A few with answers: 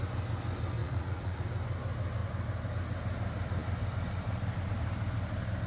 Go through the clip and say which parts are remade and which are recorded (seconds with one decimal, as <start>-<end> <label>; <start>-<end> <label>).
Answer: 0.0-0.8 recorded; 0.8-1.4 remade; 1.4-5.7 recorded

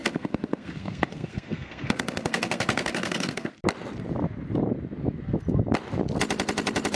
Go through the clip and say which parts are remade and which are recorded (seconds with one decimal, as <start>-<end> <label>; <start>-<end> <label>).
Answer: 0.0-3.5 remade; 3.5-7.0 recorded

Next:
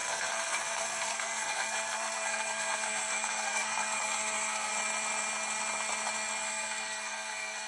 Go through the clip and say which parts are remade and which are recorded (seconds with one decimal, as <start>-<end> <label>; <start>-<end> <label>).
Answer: 0.0-4.7 remade; 4.7-6.4 recorded; 6.4-7.7 remade

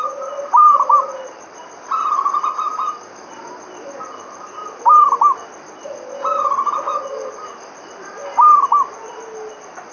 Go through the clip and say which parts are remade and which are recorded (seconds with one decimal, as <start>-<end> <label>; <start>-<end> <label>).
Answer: 0.0-4.6 remade; 4.6-6.7 recorded; 6.7-8.2 remade; 8.2-9.5 recorded; 9.5-9.9 remade

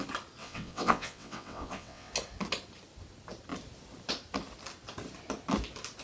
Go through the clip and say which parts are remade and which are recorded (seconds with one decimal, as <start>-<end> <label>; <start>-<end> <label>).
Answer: 0.0-0.4 recorded; 0.4-2.1 remade; 2.1-6.0 recorded

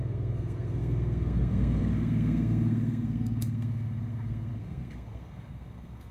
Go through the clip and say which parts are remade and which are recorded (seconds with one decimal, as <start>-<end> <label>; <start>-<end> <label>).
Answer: 0.0-6.1 remade